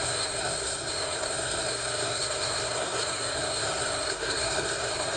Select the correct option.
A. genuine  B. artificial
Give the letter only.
B